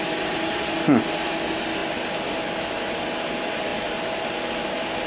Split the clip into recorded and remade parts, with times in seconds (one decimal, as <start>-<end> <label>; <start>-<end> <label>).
0.0-1.8 recorded; 1.8-3.3 remade; 3.3-5.1 recorded